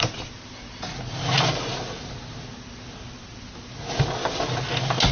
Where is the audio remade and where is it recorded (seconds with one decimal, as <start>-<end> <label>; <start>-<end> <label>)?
0.0-5.1 recorded